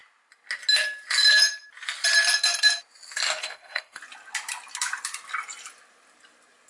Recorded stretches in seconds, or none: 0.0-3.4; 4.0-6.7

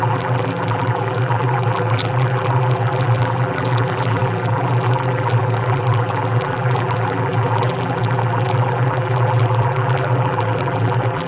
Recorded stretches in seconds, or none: none